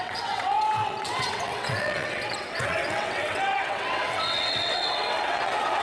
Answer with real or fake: fake